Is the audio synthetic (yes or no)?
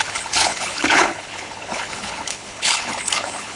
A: yes